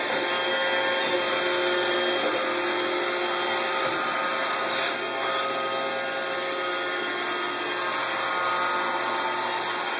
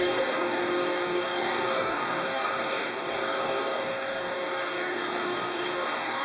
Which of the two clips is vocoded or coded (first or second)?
second